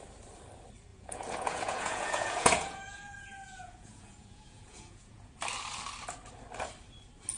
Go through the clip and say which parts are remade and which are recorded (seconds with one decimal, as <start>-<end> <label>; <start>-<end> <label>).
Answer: 0.0-0.9 recorded; 0.9-5.3 remade; 5.3-7.4 recorded